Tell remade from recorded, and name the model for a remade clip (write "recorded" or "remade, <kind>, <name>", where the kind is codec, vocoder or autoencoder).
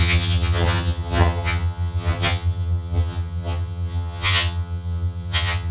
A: remade, vocoder, HiFi-GAN